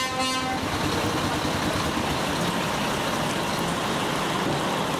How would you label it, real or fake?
real